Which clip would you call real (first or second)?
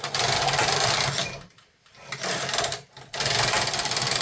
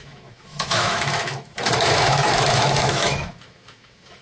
first